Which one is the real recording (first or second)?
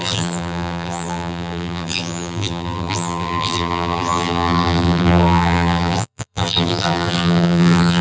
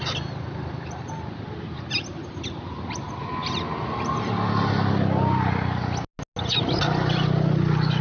second